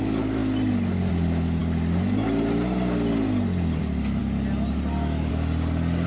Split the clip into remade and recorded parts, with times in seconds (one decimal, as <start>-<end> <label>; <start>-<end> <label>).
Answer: 0.0-6.1 recorded